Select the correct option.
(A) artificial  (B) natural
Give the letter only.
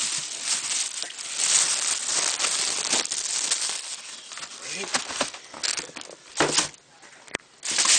B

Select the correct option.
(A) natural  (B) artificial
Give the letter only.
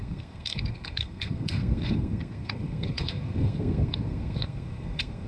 B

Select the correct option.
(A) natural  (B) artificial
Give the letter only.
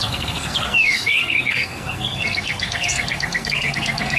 B